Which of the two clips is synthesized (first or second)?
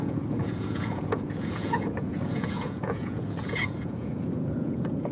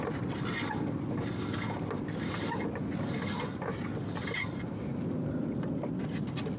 first